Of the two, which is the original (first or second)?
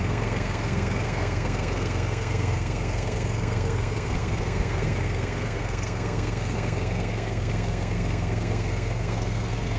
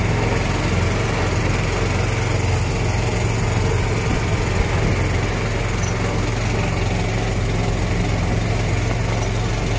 second